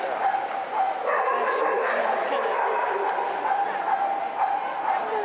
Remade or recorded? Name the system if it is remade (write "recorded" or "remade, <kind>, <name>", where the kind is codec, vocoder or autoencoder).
recorded